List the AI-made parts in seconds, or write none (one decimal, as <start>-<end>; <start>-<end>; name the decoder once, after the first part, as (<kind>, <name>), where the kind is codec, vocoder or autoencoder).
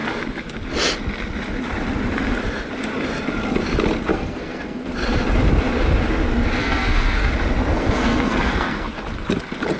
4.1-4.9 (codec, SNAC); 6.6-7.3; 7.7-8.9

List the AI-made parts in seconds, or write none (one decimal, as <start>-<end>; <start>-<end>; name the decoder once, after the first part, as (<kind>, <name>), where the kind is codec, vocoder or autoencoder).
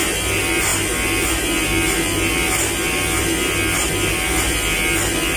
none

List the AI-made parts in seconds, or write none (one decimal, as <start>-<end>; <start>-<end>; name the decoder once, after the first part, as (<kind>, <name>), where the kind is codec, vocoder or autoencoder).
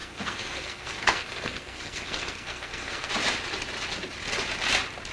0.0-3.1 (codec, SNAC)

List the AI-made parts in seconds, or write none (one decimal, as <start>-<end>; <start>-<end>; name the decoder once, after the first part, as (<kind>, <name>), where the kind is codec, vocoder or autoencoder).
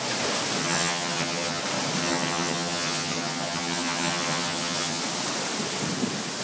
0.6-1.6 (vocoder, HiFi-GAN); 2.0-5.0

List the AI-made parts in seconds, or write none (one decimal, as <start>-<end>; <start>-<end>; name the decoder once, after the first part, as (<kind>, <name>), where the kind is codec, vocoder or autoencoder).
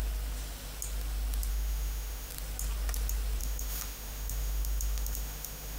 1.5-2.3 (autoencoder, DAC-VAE); 3.4-5.8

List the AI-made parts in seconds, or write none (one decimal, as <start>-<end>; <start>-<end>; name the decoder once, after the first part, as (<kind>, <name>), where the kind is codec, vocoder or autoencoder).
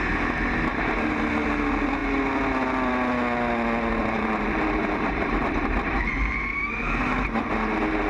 0.7-1.3 (vocoder, BigVGAN v2); 4.0-7.5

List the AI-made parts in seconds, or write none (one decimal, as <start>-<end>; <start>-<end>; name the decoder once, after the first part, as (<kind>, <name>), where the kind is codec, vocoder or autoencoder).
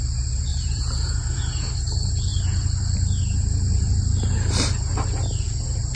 0.5-1.7 (vocoder, Vocos)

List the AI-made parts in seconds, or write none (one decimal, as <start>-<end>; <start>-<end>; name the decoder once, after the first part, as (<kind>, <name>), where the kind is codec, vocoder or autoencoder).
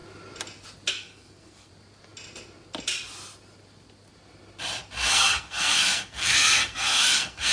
0.9-1.7 (codec, SNAC); 5.1-7.5